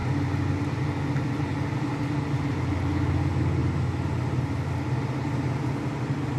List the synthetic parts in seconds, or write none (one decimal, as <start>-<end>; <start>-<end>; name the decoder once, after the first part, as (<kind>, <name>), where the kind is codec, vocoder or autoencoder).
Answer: none